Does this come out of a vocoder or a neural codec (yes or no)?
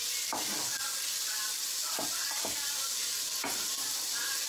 no